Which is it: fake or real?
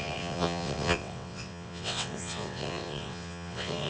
fake